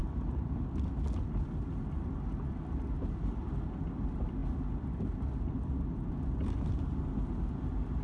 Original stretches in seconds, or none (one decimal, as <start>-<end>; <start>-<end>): 0.0-8.0